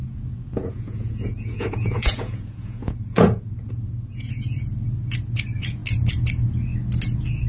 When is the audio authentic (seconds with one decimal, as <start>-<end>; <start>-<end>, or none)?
4.3-7.5